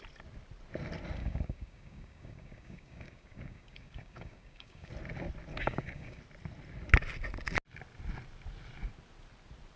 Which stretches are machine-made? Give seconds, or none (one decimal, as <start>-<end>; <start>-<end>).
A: 1.2-4.9; 5.5-6.2